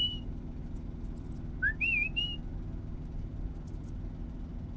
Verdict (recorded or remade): recorded